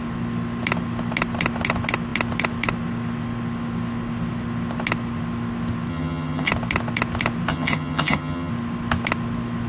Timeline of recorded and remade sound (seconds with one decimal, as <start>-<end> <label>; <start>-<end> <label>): 0.0-5.9 recorded; 5.9-6.5 remade; 6.5-7.5 recorded; 7.5-8.5 remade; 8.5-9.7 recorded